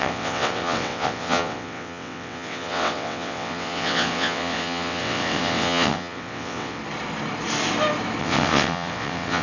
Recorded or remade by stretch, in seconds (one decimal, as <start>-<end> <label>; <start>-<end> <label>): 0.0-6.8 remade; 6.8-8.2 recorded; 8.2-9.4 remade

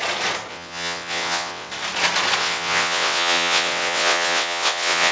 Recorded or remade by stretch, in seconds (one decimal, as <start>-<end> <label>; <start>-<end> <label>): 0.0-0.5 recorded; 0.5-1.7 remade; 1.7-2.4 recorded; 2.4-5.1 remade

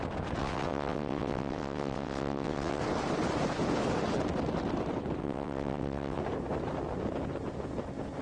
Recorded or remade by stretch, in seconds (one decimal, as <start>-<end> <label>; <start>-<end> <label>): 0.0-0.4 recorded; 0.4-2.8 remade; 2.8-5.2 recorded; 5.2-6.2 remade; 6.2-8.2 recorded

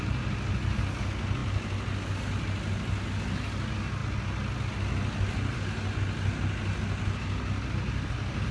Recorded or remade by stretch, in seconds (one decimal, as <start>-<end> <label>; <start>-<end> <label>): 0.0-8.5 recorded

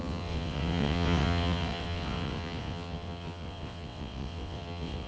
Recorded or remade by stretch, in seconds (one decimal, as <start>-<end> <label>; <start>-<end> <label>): 0.0-5.1 remade

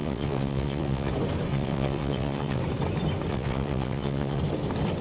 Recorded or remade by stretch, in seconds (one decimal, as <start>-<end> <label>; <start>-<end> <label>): 0.0-1.1 remade; 1.1-1.5 recorded; 1.5-2.6 remade; 2.6-3.3 recorded; 3.3-4.4 remade; 4.4-5.0 recorded

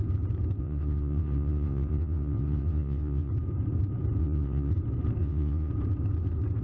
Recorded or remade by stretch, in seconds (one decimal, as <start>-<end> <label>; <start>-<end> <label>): 0.0-0.6 recorded; 0.6-3.3 remade; 3.3-4.2 recorded; 4.2-4.7 remade; 4.7-5.2 recorded; 5.2-5.7 remade; 5.7-6.6 recorded